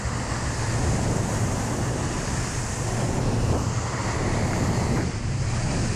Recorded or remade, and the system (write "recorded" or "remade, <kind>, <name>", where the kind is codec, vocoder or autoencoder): recorded